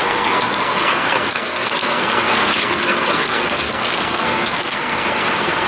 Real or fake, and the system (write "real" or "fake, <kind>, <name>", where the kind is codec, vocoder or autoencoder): fake, codec, SNAC